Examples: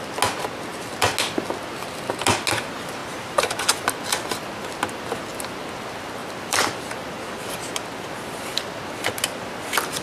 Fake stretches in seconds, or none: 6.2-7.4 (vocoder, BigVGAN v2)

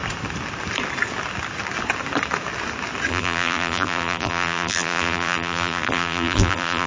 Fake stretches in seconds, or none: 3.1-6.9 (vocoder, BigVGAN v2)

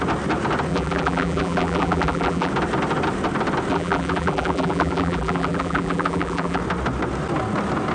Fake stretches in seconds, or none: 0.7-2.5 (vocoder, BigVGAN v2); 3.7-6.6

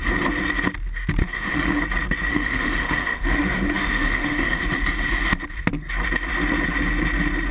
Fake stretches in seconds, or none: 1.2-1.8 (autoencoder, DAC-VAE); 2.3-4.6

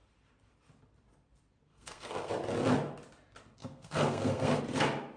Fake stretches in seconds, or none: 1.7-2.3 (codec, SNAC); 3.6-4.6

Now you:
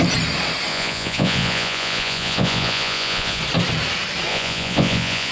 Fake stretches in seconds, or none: 0.7-3.4 (vocoder, Vocos); 4.3-5.3

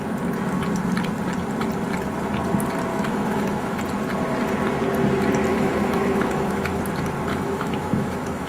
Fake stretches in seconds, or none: 2.9-3.8 (autoencoder, DAC-VAE); 5.5-6.8; 7.3-8.5

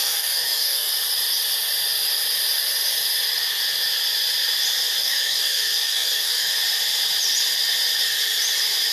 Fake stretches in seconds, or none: 0.0-0.9 (codec, DAC); 5.0-6.5